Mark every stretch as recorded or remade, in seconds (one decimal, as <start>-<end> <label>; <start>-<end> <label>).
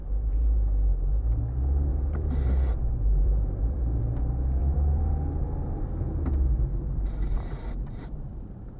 0.0-1.4 remade; 1.4-1.9 recorded; 1.9-4.0 remade; 4.0-4.6 recorded; 4.6-5.1 remade; 5.1-6.7 recorded; 6.7-8.8 remade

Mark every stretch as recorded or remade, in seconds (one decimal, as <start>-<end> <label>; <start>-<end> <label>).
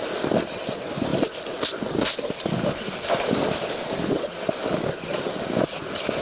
0.0-5.1 recorded; 5.1-5.6 remade; 5.6-6.2 recorded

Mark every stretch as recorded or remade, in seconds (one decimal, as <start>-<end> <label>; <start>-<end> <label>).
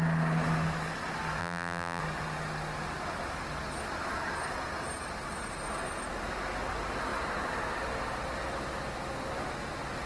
0.0-1.4 recorded; 1.4-2.0 remade; 2.0-10.1 recorded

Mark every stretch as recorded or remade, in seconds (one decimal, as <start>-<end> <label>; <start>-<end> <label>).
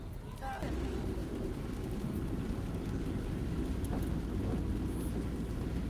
0.0-5.9 recorded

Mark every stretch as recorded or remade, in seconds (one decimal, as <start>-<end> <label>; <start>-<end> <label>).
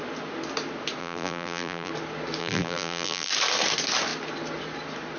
0.0-1.0 recorded; 1.0-1.9 remade; 1.9-2.4 recorded; 2.4-3.3 remade; 3.3-5.2 recorded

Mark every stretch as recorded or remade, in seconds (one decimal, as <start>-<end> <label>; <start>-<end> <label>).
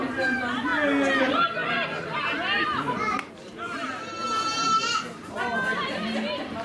0.0-0.7 remade; 0.7-1.2 recorded; 1.2-6.6 remade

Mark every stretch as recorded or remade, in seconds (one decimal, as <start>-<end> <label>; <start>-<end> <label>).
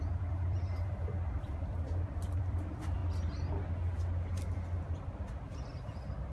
0.0-3.0 remade; 3.0-4.5 recorded; 4.5-6.3 remade